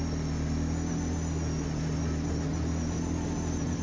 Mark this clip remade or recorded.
recorded